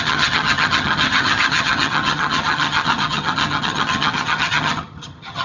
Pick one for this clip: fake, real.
fake